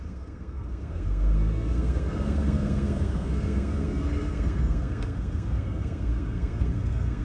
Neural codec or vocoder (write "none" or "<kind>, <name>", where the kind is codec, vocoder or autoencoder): codec, SNAC